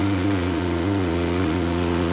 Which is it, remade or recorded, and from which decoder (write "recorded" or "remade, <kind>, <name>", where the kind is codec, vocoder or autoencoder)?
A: remade, vocoder, Vocos